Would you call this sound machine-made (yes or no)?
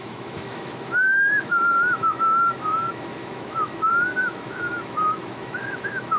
yes